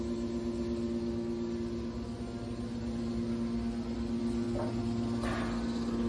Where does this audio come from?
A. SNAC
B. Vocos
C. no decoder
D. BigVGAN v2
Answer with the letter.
C